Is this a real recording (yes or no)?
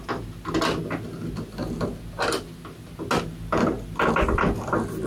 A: yes